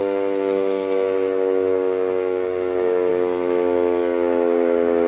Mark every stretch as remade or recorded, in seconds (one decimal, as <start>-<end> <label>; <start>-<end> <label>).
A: 0.0-5.1 remade